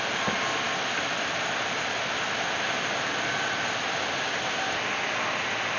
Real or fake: real